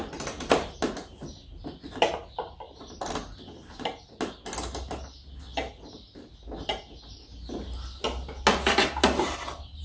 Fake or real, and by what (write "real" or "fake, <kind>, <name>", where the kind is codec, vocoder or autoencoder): real